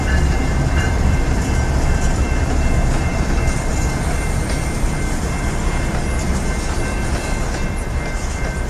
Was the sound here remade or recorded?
remade